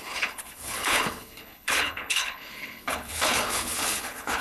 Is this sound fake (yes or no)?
yes